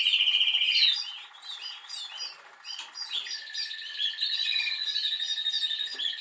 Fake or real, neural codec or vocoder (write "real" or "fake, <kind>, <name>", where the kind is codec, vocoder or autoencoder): real